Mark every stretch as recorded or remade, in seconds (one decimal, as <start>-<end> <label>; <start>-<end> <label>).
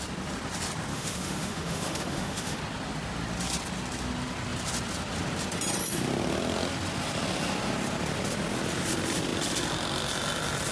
0.0-0.9 recorded; 0.9-2.6 remade; 2.6-10.7 recorded